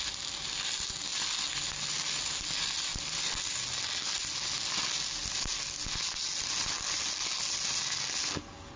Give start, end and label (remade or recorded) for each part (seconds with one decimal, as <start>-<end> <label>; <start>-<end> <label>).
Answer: 0.0-8.8 recorded